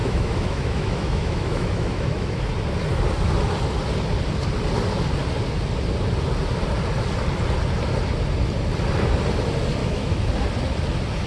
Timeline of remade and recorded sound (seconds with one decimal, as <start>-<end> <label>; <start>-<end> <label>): 0.0-2.4 remade; 2.4-9.8 recorded; 9.8-10.3 remade; 10.3-11.3 recorded